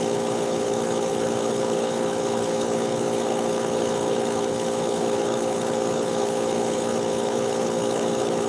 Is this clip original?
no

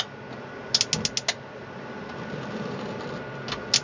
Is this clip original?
yes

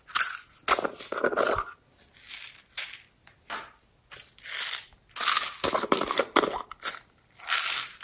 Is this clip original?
yes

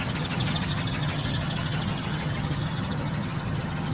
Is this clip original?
no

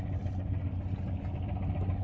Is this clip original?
yes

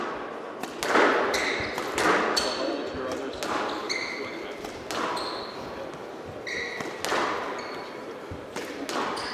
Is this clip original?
yes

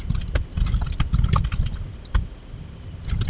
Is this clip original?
yes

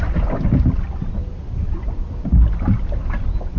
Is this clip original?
yes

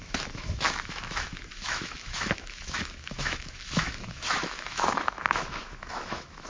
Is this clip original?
no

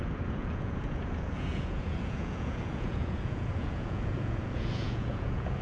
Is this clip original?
no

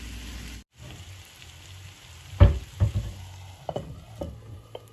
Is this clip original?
yes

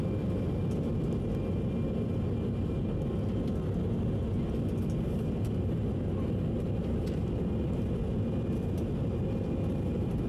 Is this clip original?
yes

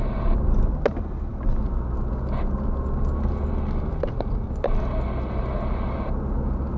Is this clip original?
yes